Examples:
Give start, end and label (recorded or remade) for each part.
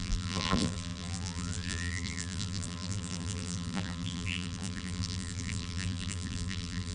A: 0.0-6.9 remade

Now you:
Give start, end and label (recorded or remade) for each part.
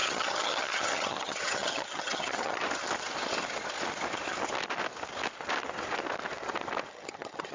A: 0.0-2.6 remade; 2.6-6.9 recorded; 6.9-7.5 remade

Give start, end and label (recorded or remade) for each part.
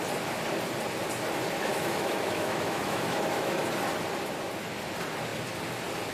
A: 0.0-1.7 recorded; 1.7-3.6 remade; 3.6-6.1 recorded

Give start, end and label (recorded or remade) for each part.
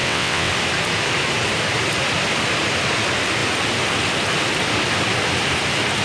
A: 0.0-0.5 remade; 0.5-6.0 recorded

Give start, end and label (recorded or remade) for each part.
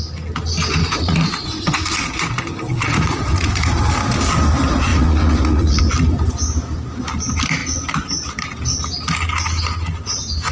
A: 0.0-0.8 recorded; 0.8-2.4 remade; 2.4-2.8 recorded; 2.8-3.8 remade; 3.8-4.9 recorded; 4.9-5.8 remade; 5.8-10.5 recorded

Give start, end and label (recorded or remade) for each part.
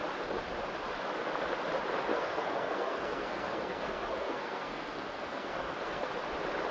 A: 0.0-2.1 recorded; 2.1-6.1 remade; 6.1-6.7 recorded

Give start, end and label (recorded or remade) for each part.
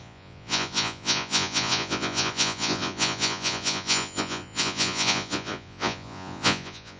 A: 0.0-7.0 remade